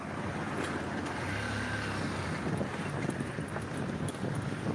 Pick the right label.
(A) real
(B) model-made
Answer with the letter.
A